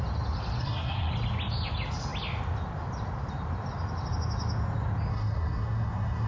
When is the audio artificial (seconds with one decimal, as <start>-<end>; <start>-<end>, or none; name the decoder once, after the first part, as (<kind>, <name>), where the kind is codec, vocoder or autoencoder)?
0.6-1.1 (codec, SNAC); 5.1-6.3